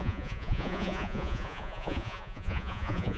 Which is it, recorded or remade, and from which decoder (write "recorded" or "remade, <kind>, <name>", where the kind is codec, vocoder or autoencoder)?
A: remade, vocoder, Vocos